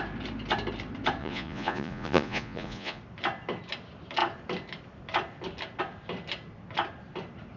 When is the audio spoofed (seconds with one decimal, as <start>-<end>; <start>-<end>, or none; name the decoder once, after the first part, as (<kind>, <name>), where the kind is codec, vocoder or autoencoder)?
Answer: 1.2-3.0 (vocoder, Vocos)